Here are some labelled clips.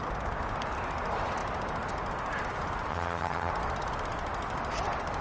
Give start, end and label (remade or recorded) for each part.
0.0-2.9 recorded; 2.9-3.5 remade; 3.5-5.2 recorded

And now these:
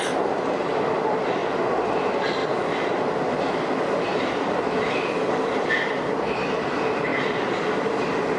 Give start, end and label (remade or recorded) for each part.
0.0-8.4 remade

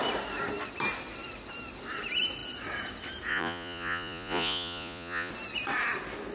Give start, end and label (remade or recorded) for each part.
0.0-3.3 recorded; 3.3-5.3 remade; 5.3-6.3 recorded

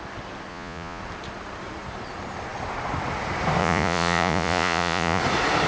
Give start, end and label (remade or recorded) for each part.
0.0-0.5 recorded; 0.5-1.0 remade; 1.0-3.6 recorded; 3.6-5.2 remade; 5.2-5.7 recorded